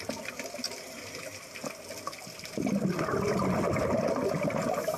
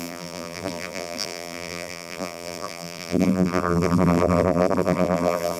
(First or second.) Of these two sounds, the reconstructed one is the second